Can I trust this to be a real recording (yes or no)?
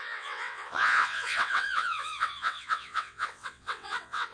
no